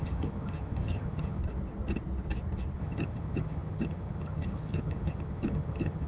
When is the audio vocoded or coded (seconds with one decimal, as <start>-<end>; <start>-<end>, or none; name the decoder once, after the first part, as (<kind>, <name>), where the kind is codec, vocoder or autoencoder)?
0.0-1.4 (vocoder, HiFi-GAN); 2.8-6.1